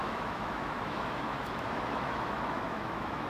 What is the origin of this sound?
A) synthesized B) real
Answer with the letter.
A